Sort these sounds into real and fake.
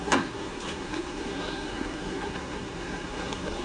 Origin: fake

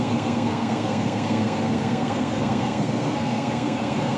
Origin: fake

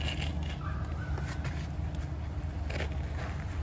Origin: real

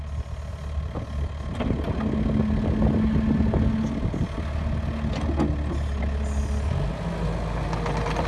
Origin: real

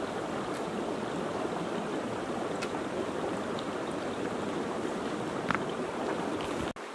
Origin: real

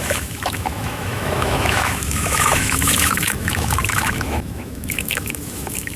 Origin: fake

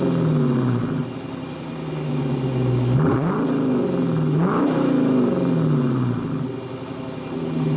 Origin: real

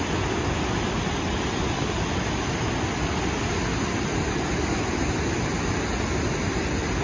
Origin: real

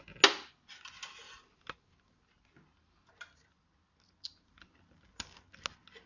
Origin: real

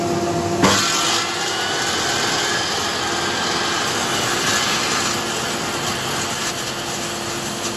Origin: real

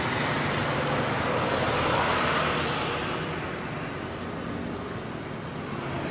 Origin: real